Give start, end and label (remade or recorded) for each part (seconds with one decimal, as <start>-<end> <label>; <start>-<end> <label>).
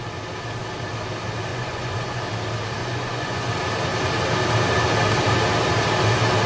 0.0-1.5 recorded; 1.5-2.2 remade; 2.2-2.8 recorded; 2.8-3.5 remade; 3.5-6.5 recorded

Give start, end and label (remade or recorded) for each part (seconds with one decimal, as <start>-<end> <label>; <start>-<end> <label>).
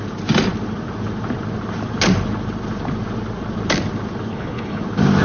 0.0-4.3 recorded; 4.3-4.8 remade; 4.8-5.2 recorded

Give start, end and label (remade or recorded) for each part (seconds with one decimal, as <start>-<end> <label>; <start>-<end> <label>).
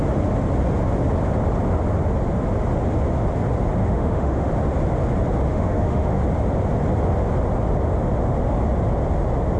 0.0-3.8 recorded; 3.8-4.5 remade; 4.5-5.5 recorded; 5.5-6.2 remade; 6.2-9.6 recorded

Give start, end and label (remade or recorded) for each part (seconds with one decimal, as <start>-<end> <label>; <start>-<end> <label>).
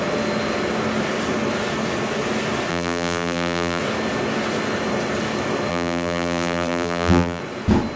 0.0-2.7 recorded; 2.7-3.8 remade; 3.8-5.7 recorded; 5.7-7.4 remade; 7.4-8.0 recorded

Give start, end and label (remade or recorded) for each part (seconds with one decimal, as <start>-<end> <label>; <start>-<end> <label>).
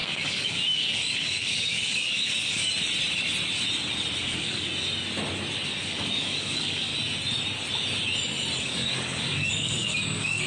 0.0-2.7 remade; 2.7-4.2 recorded; 4.2-4.7 remade; 4.7-5.8 recorded; 5.8-6.9 remade; 6.9-8.6 recorded; 8.6-10.5 remade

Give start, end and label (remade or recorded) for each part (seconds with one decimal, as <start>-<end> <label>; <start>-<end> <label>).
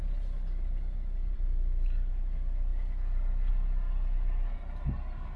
0.0-1.2 recorded; 1.2-2.1 remade; 2.1-5.4 recorded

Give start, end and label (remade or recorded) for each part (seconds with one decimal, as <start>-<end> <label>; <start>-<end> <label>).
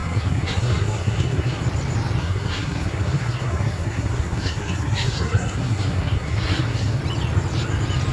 0.0-1.6 remade; 1.6-2.2 recorded; 2.2-7.0 remade; 7.0-8.1 recorded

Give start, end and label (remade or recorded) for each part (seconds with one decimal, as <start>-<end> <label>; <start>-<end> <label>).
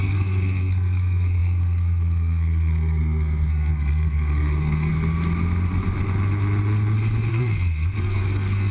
0.0-4.9 remade; 4.9-7.3 recorded; 7.3-8.7 remade